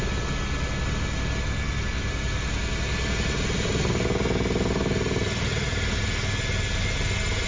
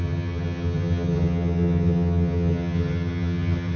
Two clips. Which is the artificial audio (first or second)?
second